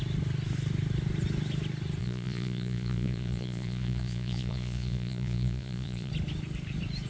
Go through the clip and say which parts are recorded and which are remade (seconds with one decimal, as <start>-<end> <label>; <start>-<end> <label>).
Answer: 0.0-2.0 recorded; 2.0-6.1 remade; 6.1-7.1 recorded